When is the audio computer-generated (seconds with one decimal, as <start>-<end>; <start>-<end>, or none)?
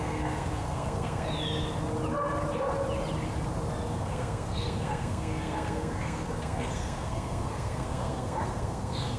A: 0.0-1.3; 3.9-9.2